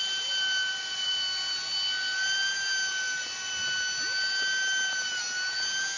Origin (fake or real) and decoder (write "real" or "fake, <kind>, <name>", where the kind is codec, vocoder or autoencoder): real